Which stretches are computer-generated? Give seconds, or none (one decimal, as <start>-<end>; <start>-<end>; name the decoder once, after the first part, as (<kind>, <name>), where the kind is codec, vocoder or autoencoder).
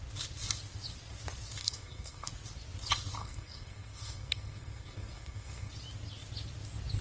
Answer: 1.6-2.3 (codec, SNAC); 3.2-5.7